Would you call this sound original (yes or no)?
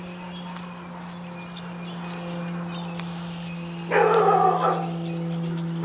yes